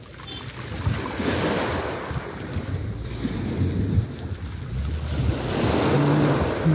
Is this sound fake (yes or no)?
no